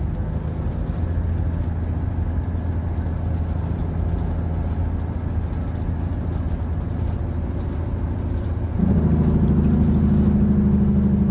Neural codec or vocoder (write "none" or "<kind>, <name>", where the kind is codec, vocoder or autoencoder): none